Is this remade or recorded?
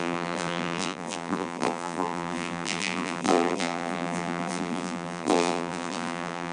remade